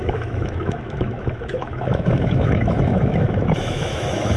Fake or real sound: fake